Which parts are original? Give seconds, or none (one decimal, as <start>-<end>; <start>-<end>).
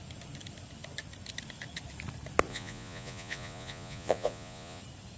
0.0-2.5; 4.8-5.2